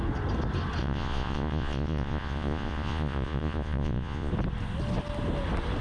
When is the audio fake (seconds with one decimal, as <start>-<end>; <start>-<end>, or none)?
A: 0.8-4.3